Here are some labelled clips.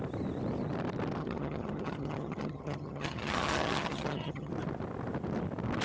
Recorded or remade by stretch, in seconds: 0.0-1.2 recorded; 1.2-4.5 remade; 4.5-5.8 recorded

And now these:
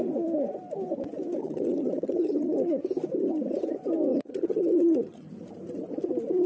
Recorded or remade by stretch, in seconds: 0.0-1.4 recorded; 1.4-2.8 remade; 2.8-4.1 recorded; 4.1-5.3 remade; 5.3-6.5 recorded

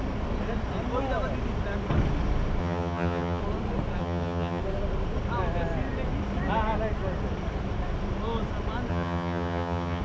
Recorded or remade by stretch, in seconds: 0.0-2.6 recorded; 2.6-3.4 remade; 3.4-4.0 recorded; 4.0-4.6 remade; 4.6-8.9 recorded; 8.9-10.0 remade

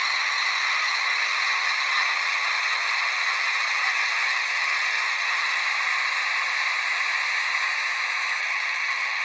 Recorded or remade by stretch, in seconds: 0.0-5.6 remade; 5.6-8.4 recorded; 8.4-9.2 remade

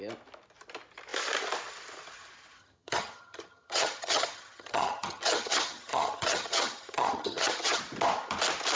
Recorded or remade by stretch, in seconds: 0.0-2.6 recorded; 2.6-7.8 remade; 7.8-8.8 recorded

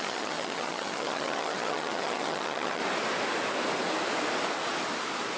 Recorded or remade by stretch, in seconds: 0.0-2.8 remade; 2.8-5.4 recorded

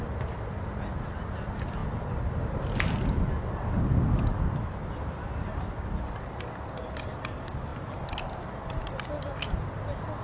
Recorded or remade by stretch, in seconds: 0.0-10.2 recorded